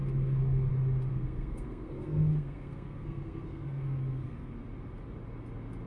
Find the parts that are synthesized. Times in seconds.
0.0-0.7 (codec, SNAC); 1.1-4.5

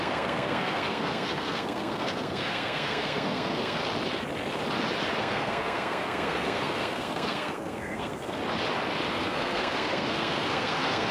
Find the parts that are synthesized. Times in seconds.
0.0-3.8 (codec, SNAC); 5.2-8.4; 9.1-11.1

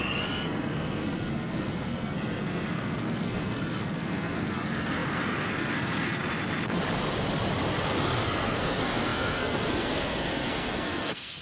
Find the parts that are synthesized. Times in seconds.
0.0-6.2 (codec, SNAC); 7.8-11.4

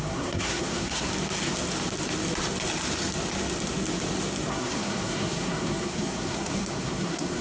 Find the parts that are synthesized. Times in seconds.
0.0-1.1 (codec, SNAC); 4.5-7.4

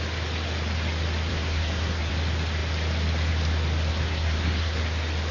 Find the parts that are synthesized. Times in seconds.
1.3-2.1 (codec, SNAC); 3.9-4.8

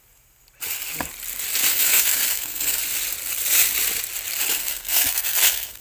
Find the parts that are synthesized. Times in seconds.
1.7-2.8 (codec, SNAC); 4.6-5.8